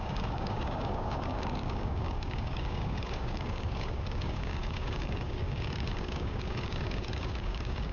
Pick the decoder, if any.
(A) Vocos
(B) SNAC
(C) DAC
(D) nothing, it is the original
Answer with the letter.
C